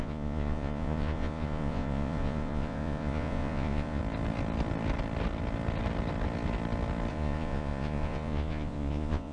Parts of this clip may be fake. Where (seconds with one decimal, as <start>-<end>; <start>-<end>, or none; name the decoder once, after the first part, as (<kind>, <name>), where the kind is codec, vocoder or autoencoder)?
0.0-4.0 (vocoder, Vocos); 7.1-9.3